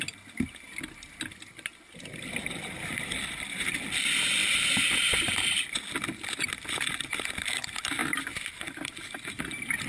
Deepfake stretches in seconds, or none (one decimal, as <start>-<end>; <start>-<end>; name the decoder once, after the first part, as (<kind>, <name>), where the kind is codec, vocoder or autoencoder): 4.4-6.0 (vocoder, BigVGAN v2); 8.0-9.4